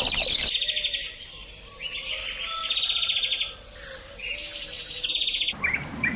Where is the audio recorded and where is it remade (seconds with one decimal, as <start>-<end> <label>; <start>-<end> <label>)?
0.0-1.4 remade; 1.4-5.1 recorded; 5.1-6.2 remade